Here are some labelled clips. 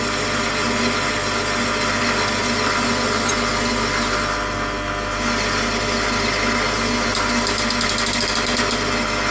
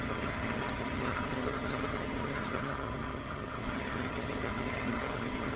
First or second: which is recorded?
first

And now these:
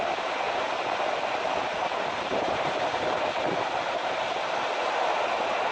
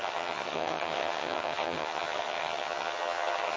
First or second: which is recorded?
first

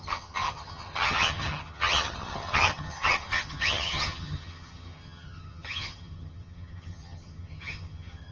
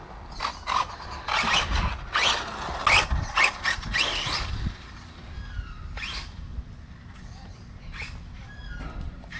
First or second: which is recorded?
second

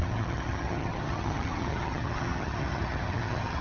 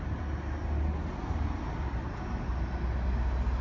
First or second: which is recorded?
second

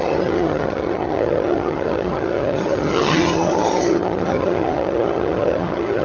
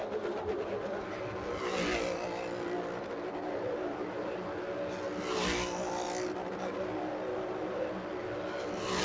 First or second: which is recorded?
second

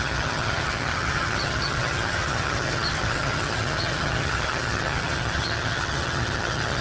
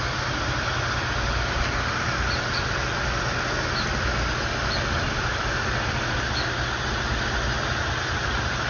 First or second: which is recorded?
second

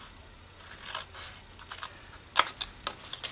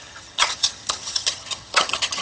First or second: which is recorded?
first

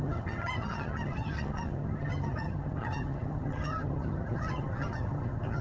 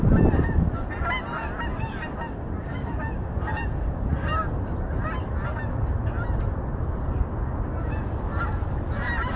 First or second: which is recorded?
second